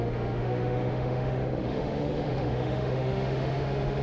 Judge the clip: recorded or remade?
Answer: remade